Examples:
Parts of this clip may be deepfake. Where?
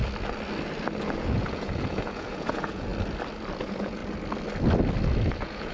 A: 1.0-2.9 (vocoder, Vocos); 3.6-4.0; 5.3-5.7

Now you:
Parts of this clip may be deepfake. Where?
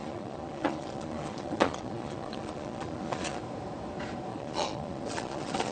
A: 0.0-3.4 (vocoder, Vocos); 4.3-5.7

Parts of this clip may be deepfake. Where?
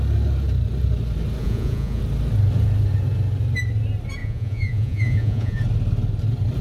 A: 1.4-2.0 (vocoder, Vocos); 4.2-5.6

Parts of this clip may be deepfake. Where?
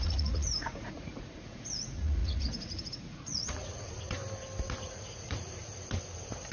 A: 0.0-4.2 (vocoder, Vocos); 4.8-5.6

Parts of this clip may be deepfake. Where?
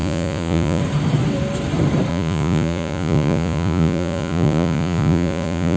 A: 0.0-0.8 (vocoder, Vocos); 2.1-5.8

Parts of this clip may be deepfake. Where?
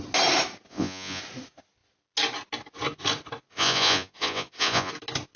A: 0.7-1.2 (vocoder, Vocos); 3.5-4.9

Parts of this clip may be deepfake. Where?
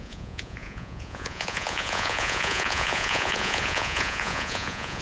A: 0.0-5.0 (vocoder, Vocos)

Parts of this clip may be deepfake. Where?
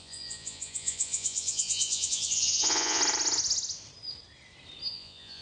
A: 0.0-3.0 (vocoder, Vocos); 4.9-5.4